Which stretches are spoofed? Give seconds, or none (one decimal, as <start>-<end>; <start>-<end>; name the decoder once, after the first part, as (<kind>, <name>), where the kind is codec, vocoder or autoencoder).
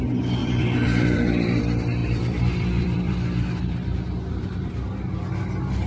0.4-1.6 (vocoder, BigVGAN v2); 2.0-4.7